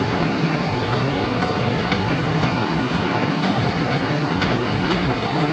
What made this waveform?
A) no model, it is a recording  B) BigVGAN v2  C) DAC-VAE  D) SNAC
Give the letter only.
D